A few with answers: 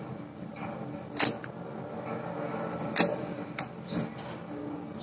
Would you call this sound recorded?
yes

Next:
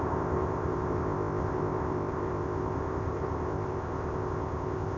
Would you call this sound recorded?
no